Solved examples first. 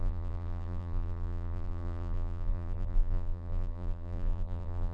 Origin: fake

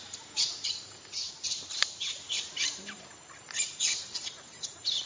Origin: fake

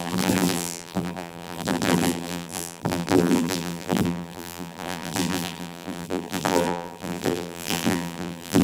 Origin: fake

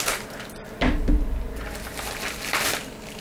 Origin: real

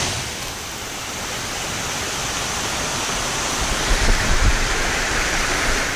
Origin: fake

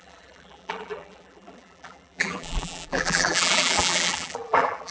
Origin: fake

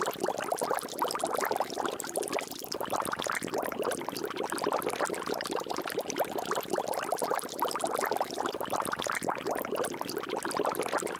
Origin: real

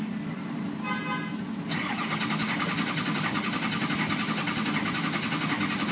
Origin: real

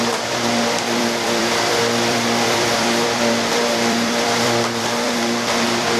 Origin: fake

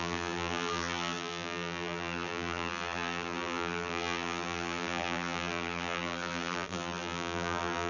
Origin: fake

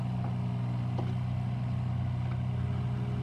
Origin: real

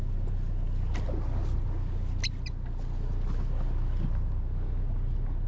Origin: real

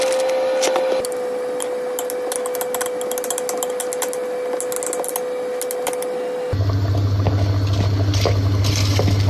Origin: real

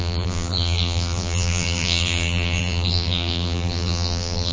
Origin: fake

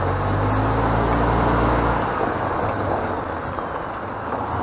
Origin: real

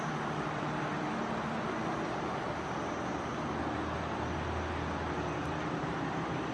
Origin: real